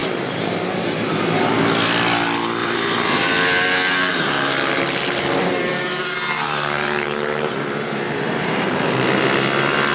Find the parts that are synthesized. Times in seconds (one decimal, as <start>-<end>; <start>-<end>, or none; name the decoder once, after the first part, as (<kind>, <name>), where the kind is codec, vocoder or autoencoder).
0.0-0.8 (vocoder, BigVGAN v2); 2.6-3.2; 4.1-8.8